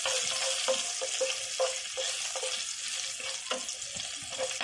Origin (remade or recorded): recorded